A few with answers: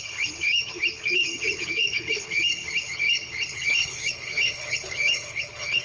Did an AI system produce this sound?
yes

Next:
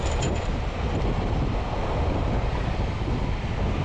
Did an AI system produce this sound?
no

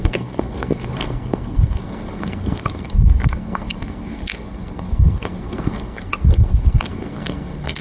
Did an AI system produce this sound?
yes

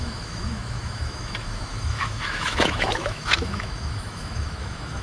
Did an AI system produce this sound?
yes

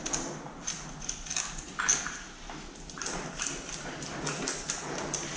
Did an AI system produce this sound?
no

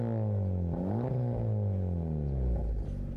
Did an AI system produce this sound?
no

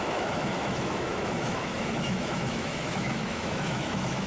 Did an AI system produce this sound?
yes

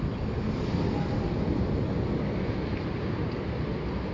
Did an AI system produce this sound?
no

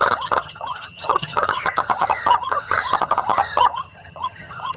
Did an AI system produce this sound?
yes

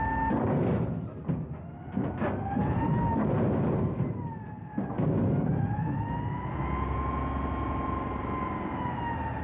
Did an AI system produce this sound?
no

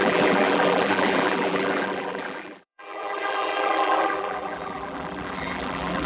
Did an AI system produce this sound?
yes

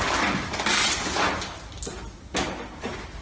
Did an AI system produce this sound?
no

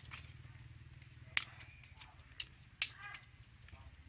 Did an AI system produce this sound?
no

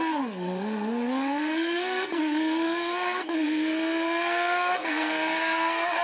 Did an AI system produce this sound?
yes